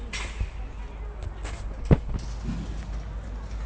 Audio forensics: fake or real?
real